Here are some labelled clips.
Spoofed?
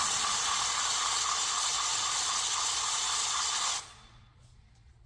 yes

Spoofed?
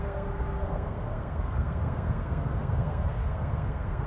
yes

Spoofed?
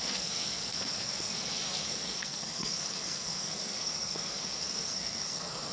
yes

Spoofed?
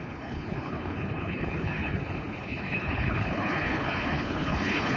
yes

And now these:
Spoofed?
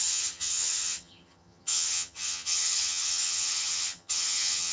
yes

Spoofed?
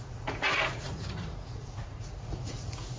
yes